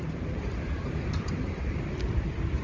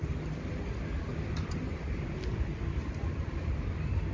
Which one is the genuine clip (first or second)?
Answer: second